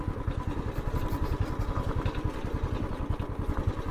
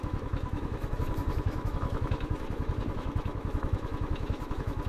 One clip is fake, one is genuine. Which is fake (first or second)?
second